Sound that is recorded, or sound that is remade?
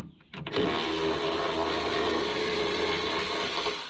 recorded